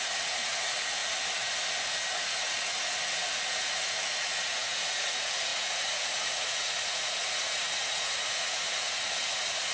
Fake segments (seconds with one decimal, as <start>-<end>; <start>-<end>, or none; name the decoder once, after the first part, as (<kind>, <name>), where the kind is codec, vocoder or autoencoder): 0.0-1.0 (vocoder, Vocos); 2.1-9.7